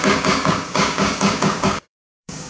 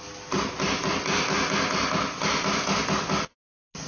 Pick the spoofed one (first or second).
first